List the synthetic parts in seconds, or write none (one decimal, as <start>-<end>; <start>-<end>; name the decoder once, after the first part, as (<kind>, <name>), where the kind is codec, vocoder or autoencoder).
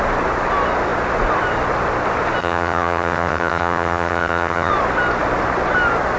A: 2.4-4.7 (vocoder, HiFi-GAN)